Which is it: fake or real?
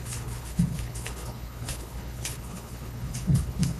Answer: fake